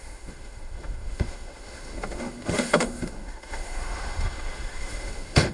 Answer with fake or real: fake